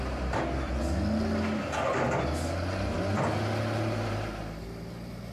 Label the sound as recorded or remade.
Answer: recorded